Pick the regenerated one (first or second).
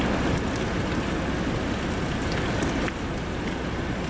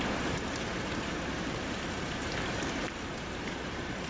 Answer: second